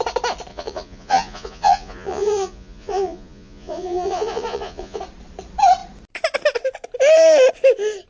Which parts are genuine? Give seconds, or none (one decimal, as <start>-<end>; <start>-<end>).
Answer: 0.0-0.5; 5.0-8.1

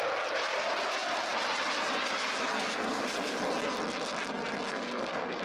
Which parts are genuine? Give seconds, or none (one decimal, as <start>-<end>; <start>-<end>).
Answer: 0.0-2.5; 3.4-4.7

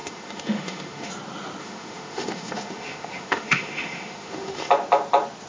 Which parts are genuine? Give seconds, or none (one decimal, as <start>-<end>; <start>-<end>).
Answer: 1.1-1.6; 4.7-5.5

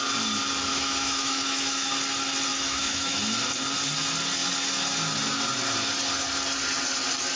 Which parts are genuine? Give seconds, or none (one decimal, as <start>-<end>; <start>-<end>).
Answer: 0.0-0.7; 1.9-2.5; 3.2-7.4

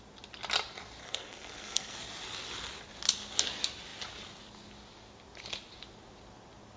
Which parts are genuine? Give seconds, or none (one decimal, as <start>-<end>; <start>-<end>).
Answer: 0.0-1.0; 2.0-6.8